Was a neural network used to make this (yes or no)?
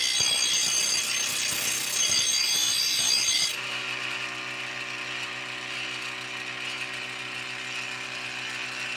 no